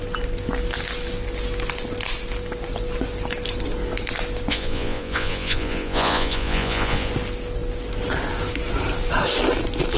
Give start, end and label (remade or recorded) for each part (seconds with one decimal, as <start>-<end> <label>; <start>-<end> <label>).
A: 0.0-4.5 recorded; 4.5-7.1 remade; 7.1-10.0 recorded